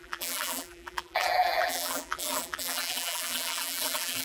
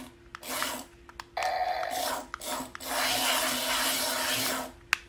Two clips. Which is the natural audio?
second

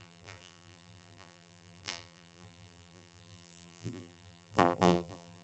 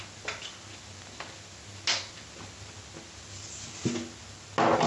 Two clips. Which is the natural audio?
second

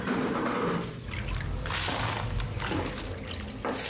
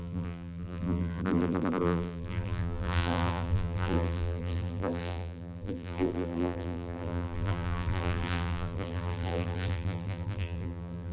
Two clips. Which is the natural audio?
first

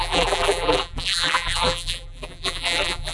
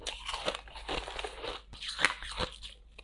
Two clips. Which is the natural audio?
second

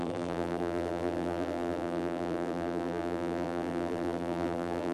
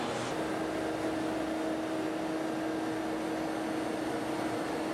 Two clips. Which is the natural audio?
second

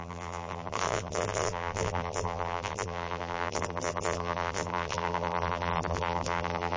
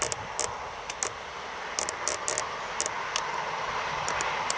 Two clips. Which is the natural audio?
second